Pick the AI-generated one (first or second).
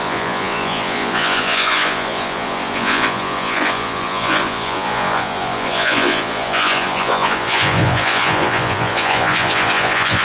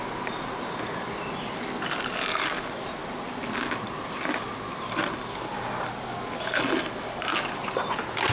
first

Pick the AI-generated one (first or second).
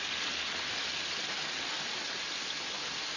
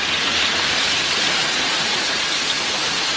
second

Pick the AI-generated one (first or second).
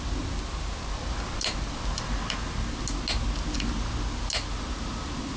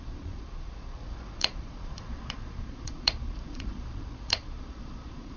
second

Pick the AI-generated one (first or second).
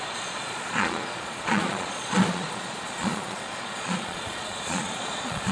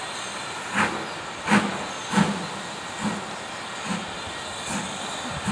first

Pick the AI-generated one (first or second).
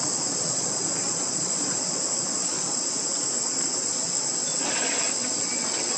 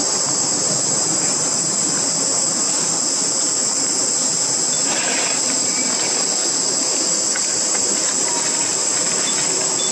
first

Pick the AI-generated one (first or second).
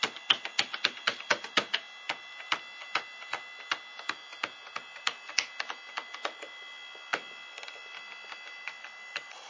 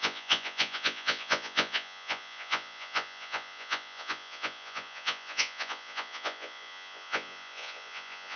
second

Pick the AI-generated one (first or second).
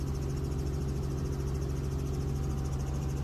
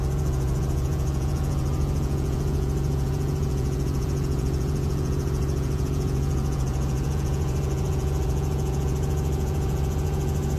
second